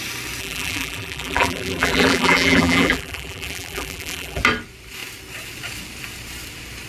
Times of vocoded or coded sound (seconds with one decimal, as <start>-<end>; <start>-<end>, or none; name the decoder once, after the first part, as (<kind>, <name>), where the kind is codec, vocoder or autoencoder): 0.4-4.4 (vocoder, BigVGAN v2)